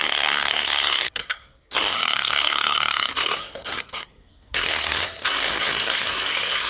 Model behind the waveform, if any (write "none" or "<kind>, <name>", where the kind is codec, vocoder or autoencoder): codec, SNAC